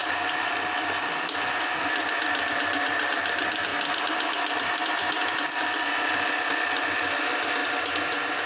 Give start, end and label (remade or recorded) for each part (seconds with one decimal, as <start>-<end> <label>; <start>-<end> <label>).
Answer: 0.0-2.6 remade; 2.6-7.6 recorded; 7.6-8.5 remade